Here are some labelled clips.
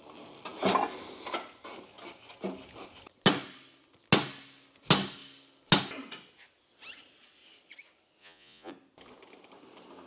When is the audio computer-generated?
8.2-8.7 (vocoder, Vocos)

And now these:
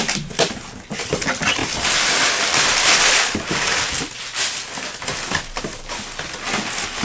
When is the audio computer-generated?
none

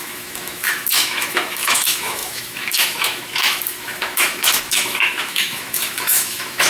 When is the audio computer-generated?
0.0-6.7 (autoencoder, DAC-VAE)

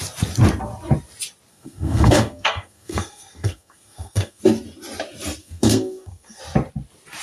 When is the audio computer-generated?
1.5-4.4 (codec, SNAC); 5.4-6.4